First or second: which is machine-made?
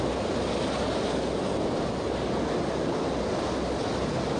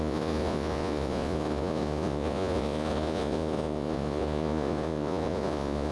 second